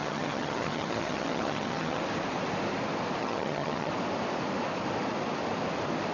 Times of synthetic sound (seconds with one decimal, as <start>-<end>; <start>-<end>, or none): 0.0-2.0; 3.2-3.9